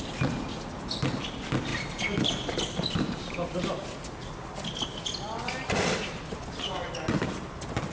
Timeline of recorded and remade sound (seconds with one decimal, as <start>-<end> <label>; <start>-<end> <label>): 0.0-7.9 recorded